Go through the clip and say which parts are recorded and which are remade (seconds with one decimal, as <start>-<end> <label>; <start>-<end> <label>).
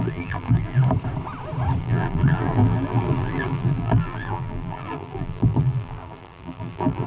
0.0-0.8 remade; 0.8-1.8 recorded; 1.8-7.1 remade